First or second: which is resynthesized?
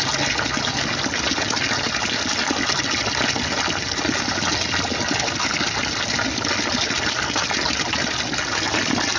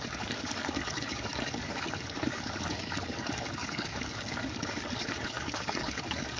second